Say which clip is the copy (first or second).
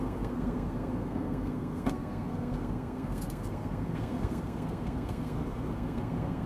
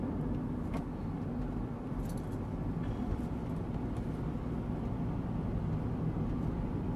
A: first